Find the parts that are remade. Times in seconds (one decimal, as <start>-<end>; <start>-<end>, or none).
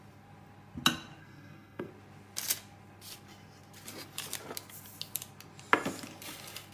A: 1.2-1.9